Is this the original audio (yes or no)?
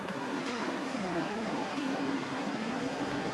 no